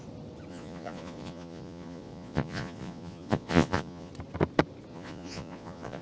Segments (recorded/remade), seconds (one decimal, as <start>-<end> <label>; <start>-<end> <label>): 0.0-0.5 recorded; 0.5-4.1 remade; 4.1-4.9 recorded; 4.9-6.0 remade